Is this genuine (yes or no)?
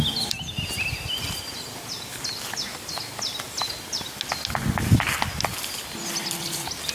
yes